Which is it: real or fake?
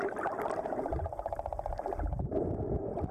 fake